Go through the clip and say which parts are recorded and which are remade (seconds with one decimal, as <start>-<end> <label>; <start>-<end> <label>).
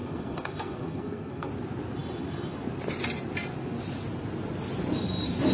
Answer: 0.0-1.5 remade; 1.5-5.5 recorded